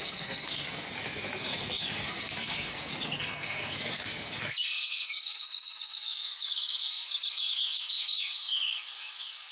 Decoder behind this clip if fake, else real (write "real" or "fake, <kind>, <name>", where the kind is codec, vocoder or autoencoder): fake, codec, SNAC